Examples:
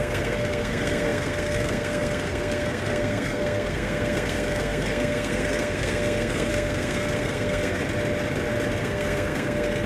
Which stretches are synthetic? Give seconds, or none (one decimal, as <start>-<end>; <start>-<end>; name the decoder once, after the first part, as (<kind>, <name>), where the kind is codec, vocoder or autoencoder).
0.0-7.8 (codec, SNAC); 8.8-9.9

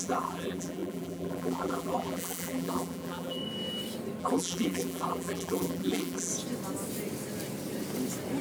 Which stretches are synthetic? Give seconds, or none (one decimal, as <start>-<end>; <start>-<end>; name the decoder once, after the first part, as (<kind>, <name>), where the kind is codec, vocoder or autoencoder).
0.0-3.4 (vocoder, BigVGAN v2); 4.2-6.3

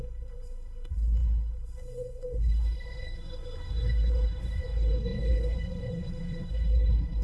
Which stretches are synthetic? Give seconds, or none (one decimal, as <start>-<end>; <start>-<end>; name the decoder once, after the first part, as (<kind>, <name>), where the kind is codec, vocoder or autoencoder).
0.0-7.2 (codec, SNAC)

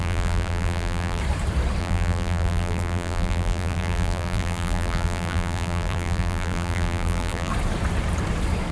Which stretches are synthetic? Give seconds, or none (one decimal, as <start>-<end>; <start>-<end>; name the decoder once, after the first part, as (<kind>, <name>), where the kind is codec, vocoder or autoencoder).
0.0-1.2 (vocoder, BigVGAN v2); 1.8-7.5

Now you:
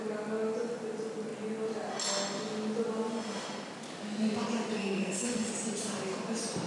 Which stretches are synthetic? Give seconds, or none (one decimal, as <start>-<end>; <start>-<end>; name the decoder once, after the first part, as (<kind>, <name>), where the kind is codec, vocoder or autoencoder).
4.8-5.5 (codec, SNAC)

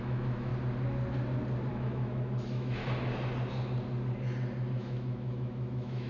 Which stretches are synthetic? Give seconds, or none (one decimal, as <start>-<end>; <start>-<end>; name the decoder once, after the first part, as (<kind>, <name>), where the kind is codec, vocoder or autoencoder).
0.0-0.5 (autoencoder, DAC-VAE); 1.7-2.8; 4.7-6.1

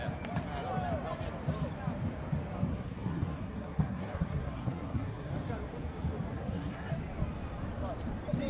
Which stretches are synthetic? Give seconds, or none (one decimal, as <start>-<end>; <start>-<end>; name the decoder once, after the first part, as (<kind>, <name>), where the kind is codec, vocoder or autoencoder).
2.7-5.3 (codec, SNAC); 6.3-6.9